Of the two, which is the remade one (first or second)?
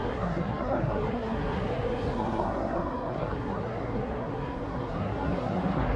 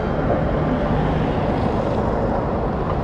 first